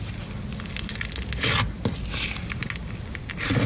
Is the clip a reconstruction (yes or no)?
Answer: no